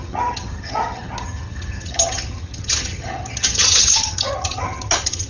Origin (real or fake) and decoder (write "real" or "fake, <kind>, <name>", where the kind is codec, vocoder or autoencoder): fake, vocoder, HiFi-GAN